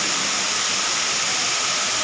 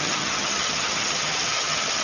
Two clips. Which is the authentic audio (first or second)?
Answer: first